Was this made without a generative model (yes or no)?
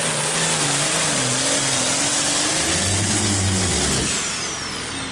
yes